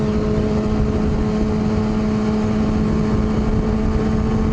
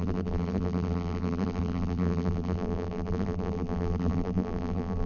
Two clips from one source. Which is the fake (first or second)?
second